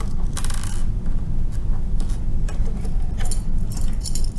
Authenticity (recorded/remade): recorded